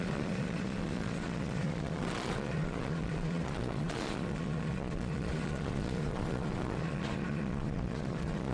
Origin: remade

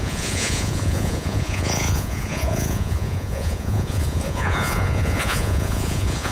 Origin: remade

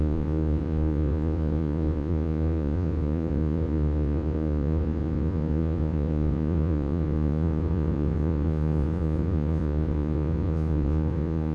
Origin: remade